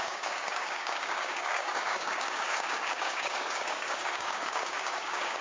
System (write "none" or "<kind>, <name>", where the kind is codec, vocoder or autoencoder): codec, DAC